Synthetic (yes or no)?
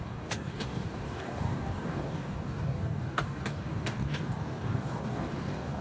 yes